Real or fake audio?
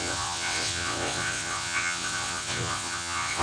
fake